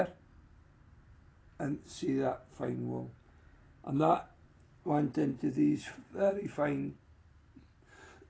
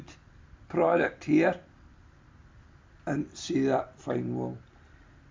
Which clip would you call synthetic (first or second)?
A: second